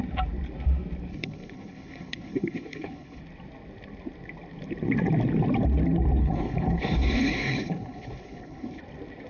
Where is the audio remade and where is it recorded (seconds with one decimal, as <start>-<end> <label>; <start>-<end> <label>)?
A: 0.0-1.1 recorded; 1.1-3.2 remade; 3.2-6.2 recorded; 6.2-8.8 remade; 8.8-9.3 recorded